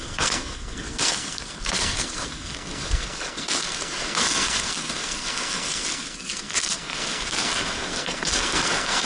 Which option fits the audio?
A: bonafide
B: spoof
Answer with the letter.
B